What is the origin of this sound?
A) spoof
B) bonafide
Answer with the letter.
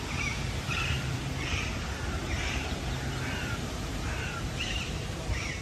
A